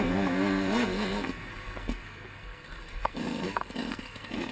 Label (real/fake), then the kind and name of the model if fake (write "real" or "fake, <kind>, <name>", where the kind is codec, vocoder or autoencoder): fake, codec, SNAC